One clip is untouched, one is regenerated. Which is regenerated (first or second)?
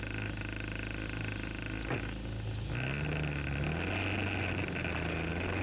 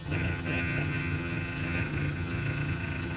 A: second